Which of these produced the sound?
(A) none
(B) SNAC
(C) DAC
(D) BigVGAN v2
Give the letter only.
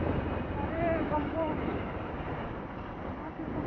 D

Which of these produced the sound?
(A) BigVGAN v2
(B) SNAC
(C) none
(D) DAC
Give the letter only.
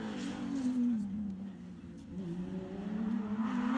C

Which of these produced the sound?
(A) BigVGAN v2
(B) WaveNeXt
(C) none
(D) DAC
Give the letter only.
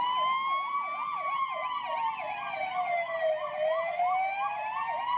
C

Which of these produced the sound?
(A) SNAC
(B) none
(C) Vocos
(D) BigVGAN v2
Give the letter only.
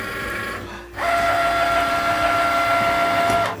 B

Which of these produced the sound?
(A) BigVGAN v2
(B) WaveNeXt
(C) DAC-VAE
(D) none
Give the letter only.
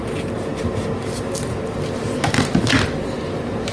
D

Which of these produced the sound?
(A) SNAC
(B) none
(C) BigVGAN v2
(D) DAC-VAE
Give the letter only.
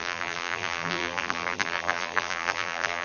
C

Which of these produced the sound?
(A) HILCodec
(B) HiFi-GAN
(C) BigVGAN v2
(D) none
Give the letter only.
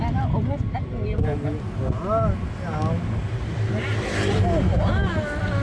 D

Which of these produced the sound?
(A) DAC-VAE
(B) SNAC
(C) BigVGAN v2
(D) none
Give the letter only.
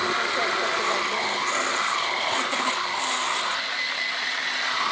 D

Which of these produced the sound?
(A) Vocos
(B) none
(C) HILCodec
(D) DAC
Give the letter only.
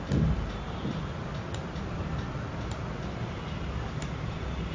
B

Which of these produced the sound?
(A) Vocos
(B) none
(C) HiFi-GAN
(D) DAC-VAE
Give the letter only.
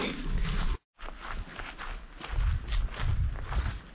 B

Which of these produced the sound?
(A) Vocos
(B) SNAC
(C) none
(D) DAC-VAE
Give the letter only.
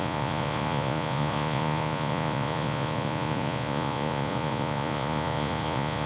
A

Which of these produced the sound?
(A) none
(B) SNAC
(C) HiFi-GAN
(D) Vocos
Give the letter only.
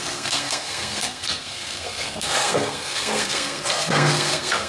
B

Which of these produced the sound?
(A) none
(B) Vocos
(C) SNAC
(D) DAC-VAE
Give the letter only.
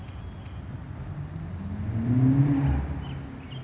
A